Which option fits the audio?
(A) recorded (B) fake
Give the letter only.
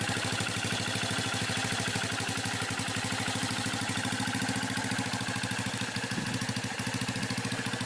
A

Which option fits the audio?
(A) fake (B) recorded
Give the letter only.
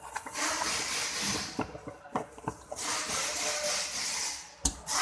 B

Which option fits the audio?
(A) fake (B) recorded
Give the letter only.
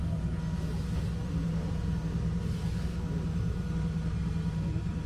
B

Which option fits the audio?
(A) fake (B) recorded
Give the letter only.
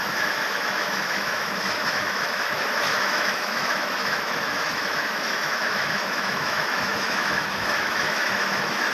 A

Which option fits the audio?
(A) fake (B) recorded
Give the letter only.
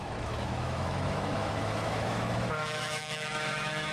A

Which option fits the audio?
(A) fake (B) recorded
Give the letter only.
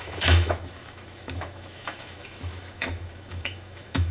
A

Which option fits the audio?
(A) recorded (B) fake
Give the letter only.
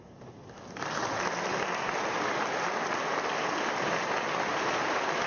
A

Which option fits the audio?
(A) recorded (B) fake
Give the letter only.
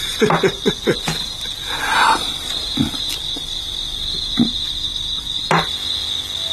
A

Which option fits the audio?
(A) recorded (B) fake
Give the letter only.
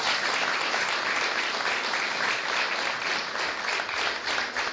A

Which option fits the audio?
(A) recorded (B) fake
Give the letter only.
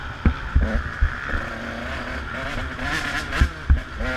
A